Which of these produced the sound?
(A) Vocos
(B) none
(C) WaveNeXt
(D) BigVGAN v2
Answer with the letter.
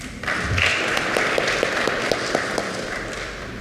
B